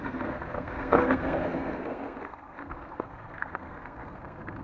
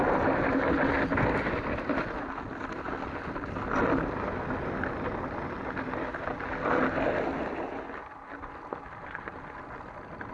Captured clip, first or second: second